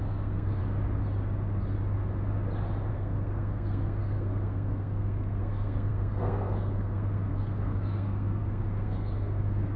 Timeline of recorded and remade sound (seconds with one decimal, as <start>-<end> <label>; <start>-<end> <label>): 0.0-0.6 remade; 0.6-2.9 recorded; 2.9-9.8 remade